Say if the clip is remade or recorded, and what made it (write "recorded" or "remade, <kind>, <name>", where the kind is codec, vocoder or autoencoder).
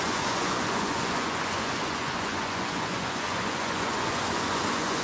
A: remade, vocoder, Vocos